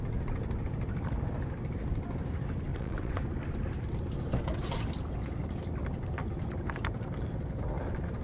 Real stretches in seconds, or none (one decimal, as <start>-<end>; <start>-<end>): 0.0-2.7; 3.2-8.2